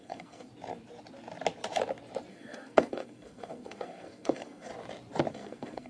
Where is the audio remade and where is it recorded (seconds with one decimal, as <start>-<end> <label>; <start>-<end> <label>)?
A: 0.0-0.5 remade; 0.5-2.3 recorded; 2.3-4.7 remade; 4.7-5.3 recorded; 5.3-5.9 remade